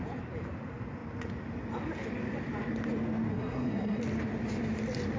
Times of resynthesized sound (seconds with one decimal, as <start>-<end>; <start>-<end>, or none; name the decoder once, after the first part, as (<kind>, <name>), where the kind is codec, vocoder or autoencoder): 3.3-4.0 (codec, SNAC)